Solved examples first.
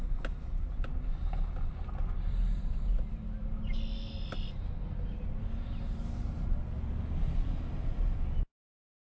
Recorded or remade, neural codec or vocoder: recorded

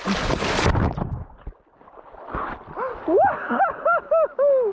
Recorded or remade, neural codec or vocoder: recorded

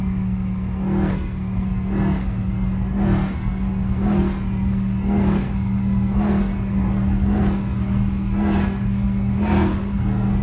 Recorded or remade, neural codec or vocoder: remade, codec, SNAC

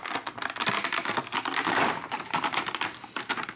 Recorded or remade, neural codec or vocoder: recorded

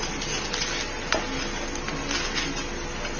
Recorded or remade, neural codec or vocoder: recorded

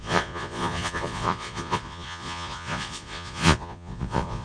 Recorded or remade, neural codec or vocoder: remade, vocoder, Vocos